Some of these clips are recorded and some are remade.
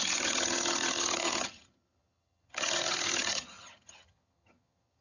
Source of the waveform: remade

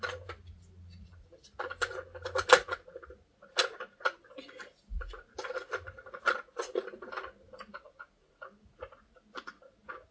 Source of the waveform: recorded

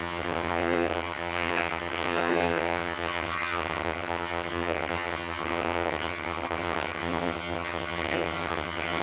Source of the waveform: remade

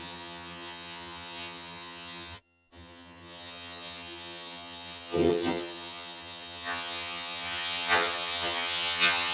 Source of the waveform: remade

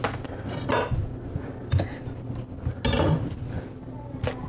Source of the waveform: recorded